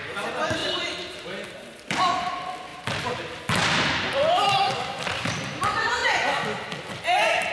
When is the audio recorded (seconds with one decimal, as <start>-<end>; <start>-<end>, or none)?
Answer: 0.0-0.6; 2.0-7.5